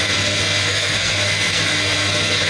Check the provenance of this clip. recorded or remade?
remade